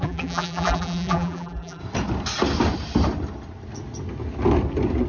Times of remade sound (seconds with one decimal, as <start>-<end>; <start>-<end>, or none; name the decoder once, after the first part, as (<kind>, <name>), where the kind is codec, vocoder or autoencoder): 0.0-1.8 (vocoder, BigVGAN v2)